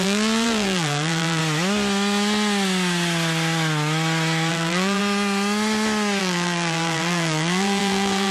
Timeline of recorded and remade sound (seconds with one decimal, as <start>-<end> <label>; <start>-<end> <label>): 0.0-1.4 remade; 1.4-4.5 recorded; 4.5-5.0 remade; 5.0-6.2 recorded; 6.2-8.3 remade